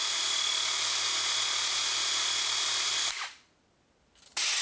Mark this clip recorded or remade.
recorded